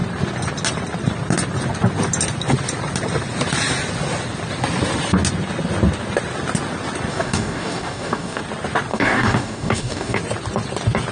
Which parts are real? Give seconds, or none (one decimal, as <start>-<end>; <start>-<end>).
0.0-7.1; 8.4-8.9; 10.2-11.1

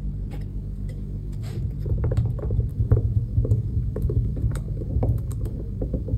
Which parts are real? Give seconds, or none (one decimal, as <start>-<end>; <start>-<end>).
0.0-0.5; 1.5-2.7

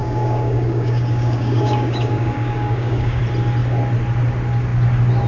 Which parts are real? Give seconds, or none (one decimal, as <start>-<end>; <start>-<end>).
3.2-5.3

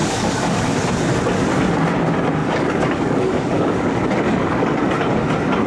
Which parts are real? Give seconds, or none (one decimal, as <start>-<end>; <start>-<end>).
0.7-2.4; 4.8-5.7

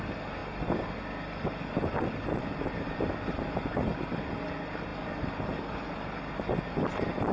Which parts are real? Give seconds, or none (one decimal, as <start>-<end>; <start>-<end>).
0.0-7.3